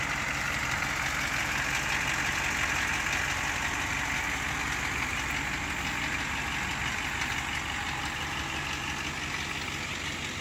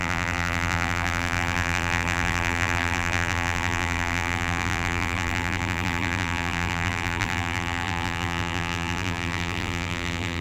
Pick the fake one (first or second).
second